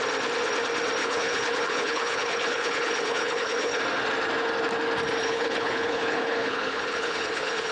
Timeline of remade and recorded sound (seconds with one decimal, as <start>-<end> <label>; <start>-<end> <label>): 0.0-1.0 recorded; 1.0-3.8 remade; 3.8-5.2 recorded; 5.2-7.7 remade